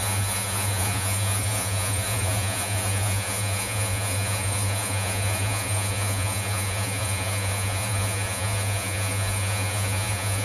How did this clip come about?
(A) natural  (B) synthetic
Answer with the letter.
B